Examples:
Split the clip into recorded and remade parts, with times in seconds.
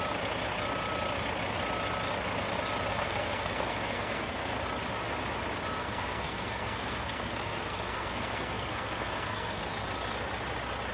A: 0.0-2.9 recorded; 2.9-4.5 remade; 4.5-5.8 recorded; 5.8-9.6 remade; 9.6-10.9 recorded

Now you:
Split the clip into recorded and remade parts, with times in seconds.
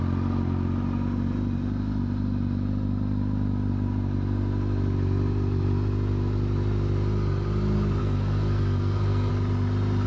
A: 0.0-8.0 recorded; 8.0-9.3 remade; 9.3-10.1 recorded